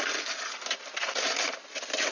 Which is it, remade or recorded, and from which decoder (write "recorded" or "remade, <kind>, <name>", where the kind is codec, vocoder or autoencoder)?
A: recorded